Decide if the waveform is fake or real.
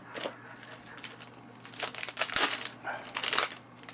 real